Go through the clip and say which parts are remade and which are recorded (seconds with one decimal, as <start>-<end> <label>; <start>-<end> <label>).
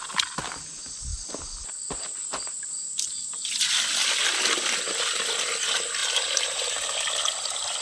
0.0-6.0 recorded; 6.0-6.9 remade; 6.9-7.8 recorded